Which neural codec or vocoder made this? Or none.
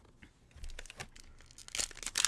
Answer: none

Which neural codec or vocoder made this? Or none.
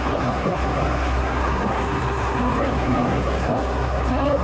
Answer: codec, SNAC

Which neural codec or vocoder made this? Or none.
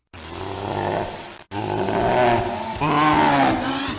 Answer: none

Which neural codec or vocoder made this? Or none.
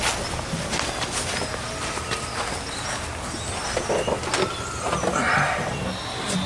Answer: none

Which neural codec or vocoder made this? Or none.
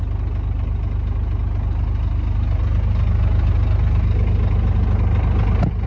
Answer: none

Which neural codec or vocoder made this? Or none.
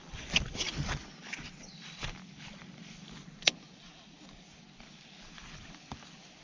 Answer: none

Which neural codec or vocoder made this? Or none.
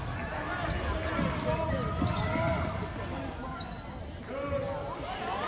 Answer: none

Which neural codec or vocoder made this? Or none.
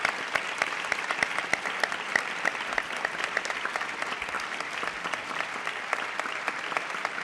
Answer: none